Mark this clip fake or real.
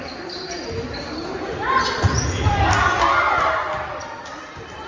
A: real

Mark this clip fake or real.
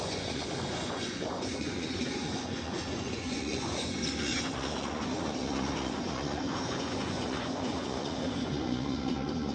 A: fake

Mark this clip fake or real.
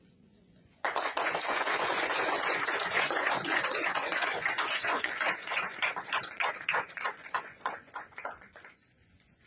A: fake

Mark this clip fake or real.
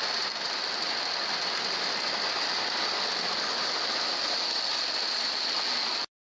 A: real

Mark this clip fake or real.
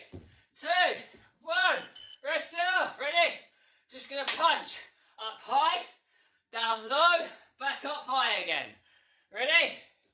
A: fake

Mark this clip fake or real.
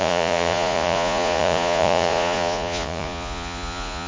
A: fake